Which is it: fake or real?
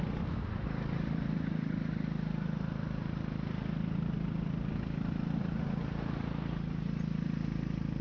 real